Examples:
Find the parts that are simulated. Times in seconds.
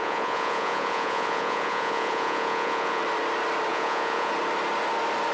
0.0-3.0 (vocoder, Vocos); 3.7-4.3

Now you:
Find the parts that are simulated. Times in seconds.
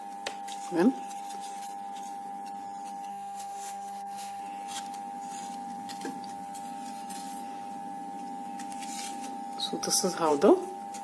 3.1-4.4 (autoencoder, DAC-VAE)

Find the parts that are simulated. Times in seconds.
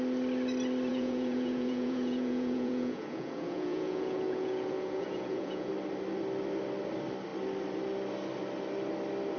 0.9-5.7 (vocoder, Vocos)